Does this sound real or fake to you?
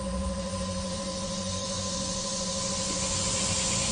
fake